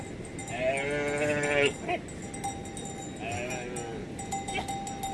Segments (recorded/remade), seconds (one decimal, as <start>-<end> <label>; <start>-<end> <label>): 0.0-5.1 recorded